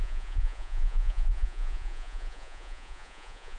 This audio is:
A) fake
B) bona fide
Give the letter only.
A